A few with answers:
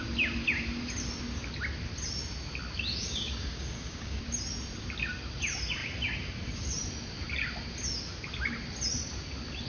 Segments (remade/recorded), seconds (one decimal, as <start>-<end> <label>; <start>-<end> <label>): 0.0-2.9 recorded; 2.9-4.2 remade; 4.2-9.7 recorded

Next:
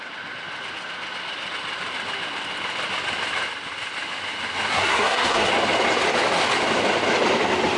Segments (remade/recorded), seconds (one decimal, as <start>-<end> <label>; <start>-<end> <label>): 0.0-4.7 recorded; 4.7-5.5 remade; 5.5-7.8 recorded

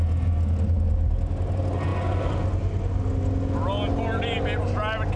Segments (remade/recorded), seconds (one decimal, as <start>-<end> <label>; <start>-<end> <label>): 0.0-5.2 recorded

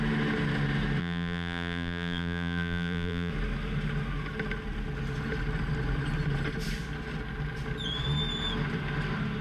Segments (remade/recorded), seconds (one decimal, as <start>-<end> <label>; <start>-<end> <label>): 0.0-1.0 recorded; 1.0-3.3 remade; 3.3-9.4 recorded